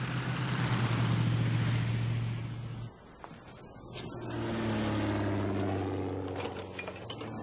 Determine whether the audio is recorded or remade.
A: recorded